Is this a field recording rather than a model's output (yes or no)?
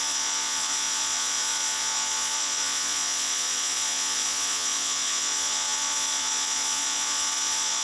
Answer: no